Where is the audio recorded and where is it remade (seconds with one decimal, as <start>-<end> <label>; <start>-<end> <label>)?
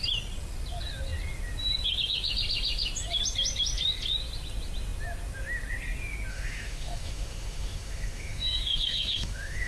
0.0-6.3 recorded; 6.3-9.7 remade